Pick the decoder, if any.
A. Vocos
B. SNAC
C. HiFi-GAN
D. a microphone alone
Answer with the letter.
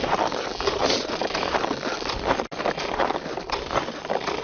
D